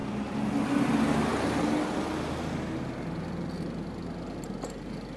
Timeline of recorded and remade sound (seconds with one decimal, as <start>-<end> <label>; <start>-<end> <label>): 0.0-5.2 recorded